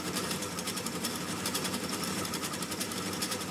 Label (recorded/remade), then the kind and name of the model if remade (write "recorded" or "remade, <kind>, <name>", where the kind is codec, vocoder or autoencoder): remade, vocoder, BigVGAN v2